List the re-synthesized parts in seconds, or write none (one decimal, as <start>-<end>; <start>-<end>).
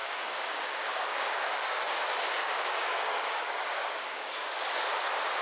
0.0-1.9; 2.4-4.6